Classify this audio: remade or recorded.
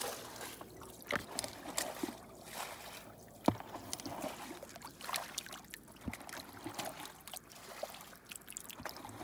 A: recorded